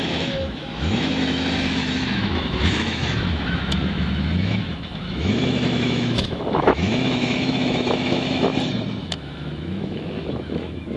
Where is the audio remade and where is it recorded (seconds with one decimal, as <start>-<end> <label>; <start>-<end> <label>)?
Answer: 0.0-8.5 remade; 8.5-9.0 recorded; 9.0-11.0 remade